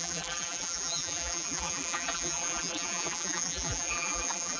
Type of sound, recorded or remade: remade